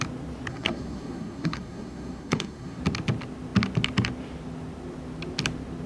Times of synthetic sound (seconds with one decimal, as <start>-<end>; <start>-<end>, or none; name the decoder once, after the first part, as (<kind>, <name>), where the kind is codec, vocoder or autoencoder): 0.5-2.8 (codec, SNAC)